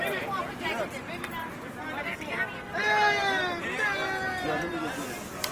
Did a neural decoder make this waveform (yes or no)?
no